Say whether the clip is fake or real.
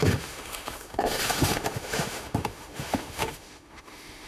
fake